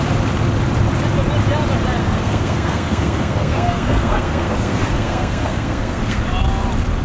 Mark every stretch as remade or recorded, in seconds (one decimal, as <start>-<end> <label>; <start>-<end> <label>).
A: 0.0-2.0 recorded; 2.0-6.2 remade; 6.2-7.0 recorded